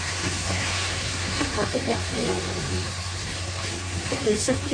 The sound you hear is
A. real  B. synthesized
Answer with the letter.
B